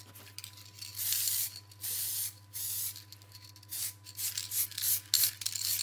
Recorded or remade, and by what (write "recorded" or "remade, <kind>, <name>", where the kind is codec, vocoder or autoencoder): recorded